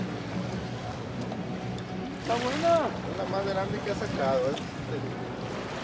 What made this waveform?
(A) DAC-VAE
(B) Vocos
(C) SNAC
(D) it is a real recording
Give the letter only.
D